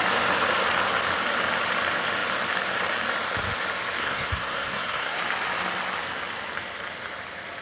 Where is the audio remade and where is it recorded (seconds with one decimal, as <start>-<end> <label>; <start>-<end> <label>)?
0.0-4.0 recorded; 4.0-5.2 remade; 5.2-7.6 recorded